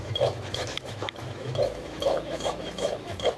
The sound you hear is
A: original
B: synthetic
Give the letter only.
B